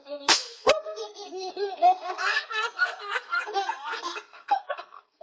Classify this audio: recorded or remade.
remade